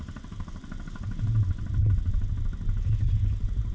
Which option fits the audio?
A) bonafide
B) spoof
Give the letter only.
A